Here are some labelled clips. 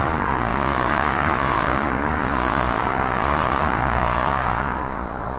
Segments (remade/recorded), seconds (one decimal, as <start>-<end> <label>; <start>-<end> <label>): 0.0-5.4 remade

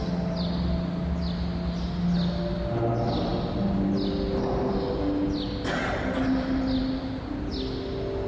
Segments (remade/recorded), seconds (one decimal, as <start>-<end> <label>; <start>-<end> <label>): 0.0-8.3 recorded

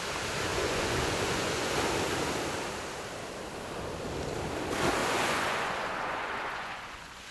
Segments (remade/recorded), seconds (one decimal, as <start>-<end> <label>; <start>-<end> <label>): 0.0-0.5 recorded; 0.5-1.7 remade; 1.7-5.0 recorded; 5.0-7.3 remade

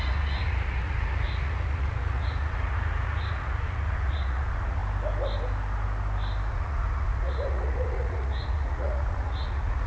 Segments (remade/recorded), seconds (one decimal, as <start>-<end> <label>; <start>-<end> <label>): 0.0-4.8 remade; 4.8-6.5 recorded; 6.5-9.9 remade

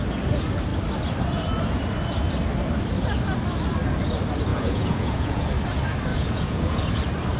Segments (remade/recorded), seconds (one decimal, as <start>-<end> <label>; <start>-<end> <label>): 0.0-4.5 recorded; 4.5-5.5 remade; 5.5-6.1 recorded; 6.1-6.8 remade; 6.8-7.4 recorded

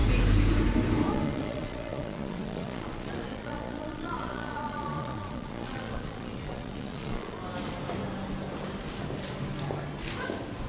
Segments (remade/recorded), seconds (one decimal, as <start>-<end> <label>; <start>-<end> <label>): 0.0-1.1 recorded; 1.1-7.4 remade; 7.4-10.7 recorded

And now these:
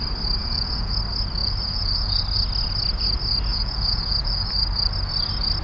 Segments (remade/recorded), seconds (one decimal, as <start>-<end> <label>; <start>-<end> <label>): 0.0-0.4 recorded; 0.4-0.9 remade; 0.9-1.4 recorded; 1.4-2.2 remade; 2.2-3.5 recorded; 3.5-4.5 remade; 4.5-5.6 recorded